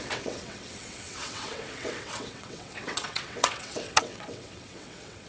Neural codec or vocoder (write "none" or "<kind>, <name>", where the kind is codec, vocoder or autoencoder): vocoder, WaveNeXt